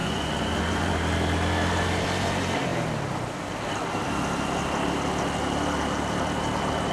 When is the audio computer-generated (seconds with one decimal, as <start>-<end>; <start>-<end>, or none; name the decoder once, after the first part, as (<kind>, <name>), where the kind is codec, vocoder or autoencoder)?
0.0-0.9 (vocoder, Vocos)